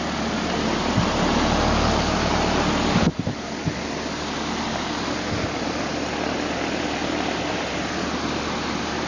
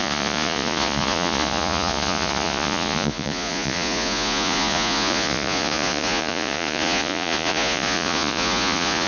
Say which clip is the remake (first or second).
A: second